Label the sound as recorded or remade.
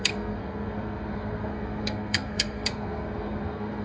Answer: remade